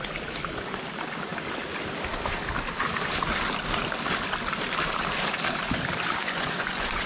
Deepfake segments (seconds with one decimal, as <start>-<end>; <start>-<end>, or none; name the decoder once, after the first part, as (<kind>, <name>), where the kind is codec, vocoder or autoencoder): 6.2-7.1 (vocoder, Vocos)